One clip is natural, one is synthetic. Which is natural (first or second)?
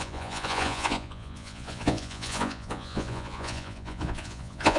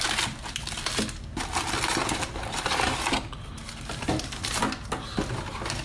second